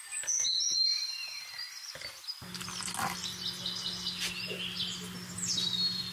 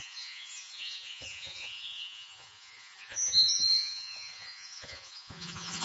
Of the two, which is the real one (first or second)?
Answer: first